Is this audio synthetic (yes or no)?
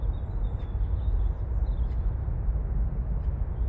no